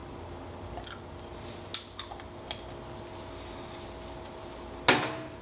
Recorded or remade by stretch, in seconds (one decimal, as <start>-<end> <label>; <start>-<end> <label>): 0.0-5.4 recorded